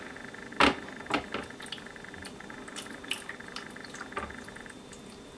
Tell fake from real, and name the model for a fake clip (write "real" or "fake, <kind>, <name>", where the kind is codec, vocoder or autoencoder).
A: real